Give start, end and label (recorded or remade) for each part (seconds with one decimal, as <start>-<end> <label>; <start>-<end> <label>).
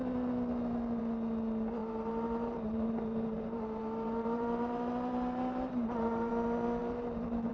0.0-1.8 recorded; 1.8-6.3 remade; 6.3-6.8 recorded; 6.8-7.5 remade